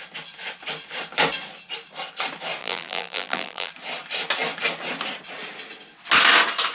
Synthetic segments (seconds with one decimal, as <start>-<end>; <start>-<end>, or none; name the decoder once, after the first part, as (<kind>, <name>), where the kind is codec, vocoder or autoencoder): 2.6-3.7 (vocoder, BigVGAN v2)